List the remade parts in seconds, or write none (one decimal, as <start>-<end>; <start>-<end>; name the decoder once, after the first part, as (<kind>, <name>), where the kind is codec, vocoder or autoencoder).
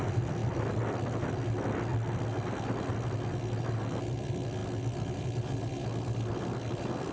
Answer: none